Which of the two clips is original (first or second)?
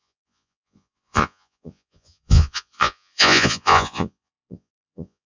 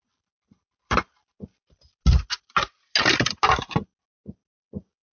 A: second